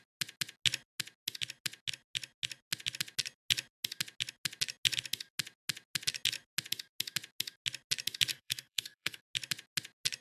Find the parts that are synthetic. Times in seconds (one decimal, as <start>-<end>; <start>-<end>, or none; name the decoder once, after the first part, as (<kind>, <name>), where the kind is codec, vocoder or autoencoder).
8.3-9.2 (codec, SNAC)